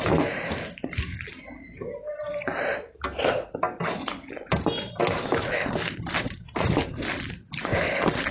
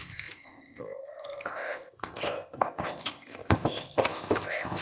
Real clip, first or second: first